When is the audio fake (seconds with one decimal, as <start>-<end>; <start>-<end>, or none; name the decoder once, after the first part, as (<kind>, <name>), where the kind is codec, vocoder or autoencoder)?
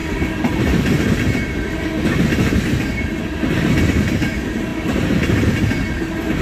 0.0-3.8 (vocoder, BigVGAN v2)